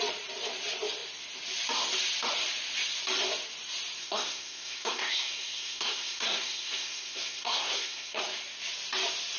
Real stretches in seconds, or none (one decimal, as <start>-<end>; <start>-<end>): 0.0-4.0; 8.2-9.4